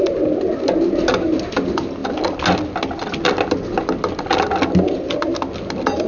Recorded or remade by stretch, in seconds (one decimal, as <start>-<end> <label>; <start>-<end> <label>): 0.0-6.1 recorded